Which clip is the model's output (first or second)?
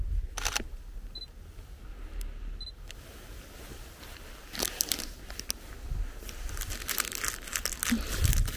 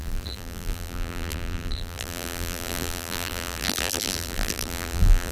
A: second